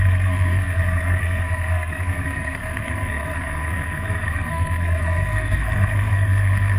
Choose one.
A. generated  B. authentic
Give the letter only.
A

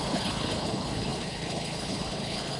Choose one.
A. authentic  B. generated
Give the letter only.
B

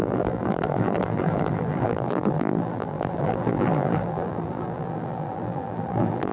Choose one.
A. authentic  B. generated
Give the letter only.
B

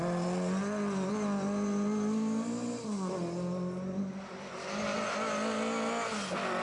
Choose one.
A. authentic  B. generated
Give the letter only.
A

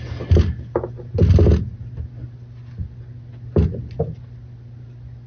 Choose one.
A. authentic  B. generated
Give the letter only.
A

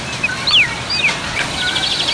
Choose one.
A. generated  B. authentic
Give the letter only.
B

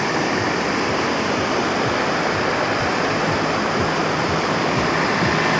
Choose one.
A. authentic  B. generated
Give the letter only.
A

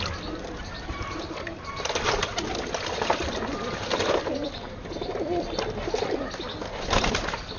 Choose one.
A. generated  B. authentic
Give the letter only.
B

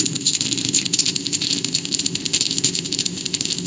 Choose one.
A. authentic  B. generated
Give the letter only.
B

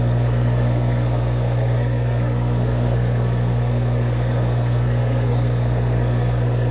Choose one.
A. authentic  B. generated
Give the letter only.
B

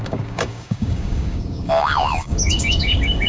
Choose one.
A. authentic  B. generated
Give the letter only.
B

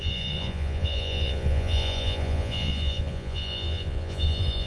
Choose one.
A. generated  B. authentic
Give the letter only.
A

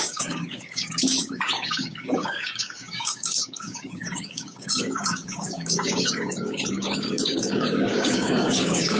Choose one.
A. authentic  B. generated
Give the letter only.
B